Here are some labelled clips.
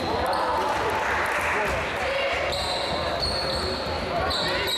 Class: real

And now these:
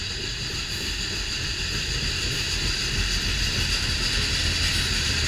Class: fake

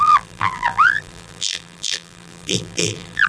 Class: fake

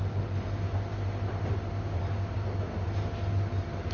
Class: real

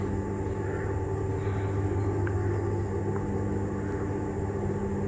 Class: real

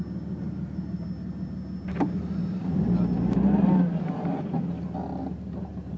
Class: real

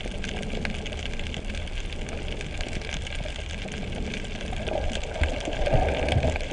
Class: real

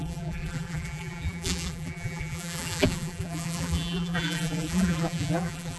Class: fake